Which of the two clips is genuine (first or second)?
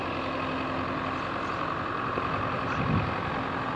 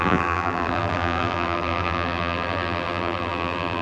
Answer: first